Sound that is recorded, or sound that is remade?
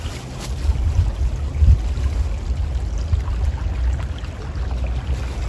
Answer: recorded